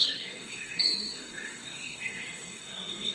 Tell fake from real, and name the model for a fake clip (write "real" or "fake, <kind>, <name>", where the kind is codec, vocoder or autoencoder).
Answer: fake, codec, SNAC